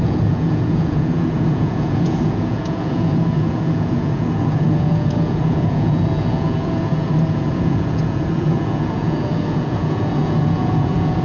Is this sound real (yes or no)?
no